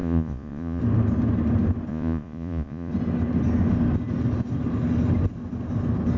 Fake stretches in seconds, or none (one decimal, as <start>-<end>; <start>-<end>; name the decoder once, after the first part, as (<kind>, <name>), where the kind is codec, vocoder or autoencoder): 0.0-0.8 (vocoder, Vocos); 1.9-2.9